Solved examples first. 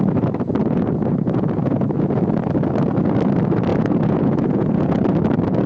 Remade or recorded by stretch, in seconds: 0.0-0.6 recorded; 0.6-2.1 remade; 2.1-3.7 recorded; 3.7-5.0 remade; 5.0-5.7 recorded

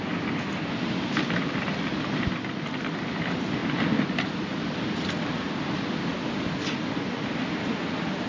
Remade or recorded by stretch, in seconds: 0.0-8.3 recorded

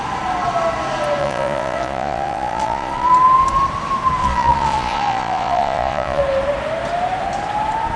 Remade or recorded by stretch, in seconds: 0.0-1.2 recorded; 1.2-3.1 remade; 3.1-4.2 recorded; 4.2-6.2 remade; 6.2-8.0 recorded

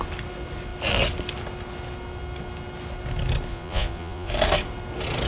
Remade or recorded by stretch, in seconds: 0.0-3.5 recorded; 3.5-4.3 remade; 4.3-5.3 recorded